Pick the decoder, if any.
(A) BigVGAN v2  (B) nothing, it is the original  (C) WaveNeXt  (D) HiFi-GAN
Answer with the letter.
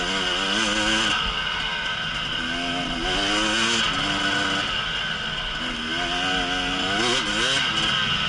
B